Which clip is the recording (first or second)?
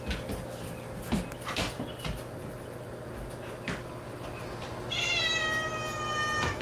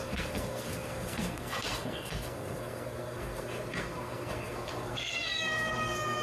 first